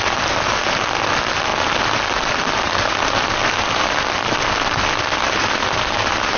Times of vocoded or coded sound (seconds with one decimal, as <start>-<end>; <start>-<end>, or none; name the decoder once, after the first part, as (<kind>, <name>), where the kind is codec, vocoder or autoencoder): none